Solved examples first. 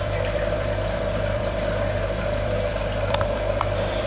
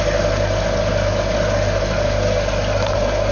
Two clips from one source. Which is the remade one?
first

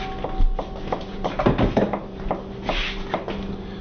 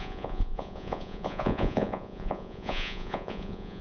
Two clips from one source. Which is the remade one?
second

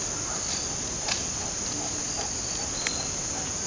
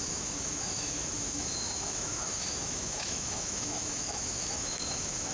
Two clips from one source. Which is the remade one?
second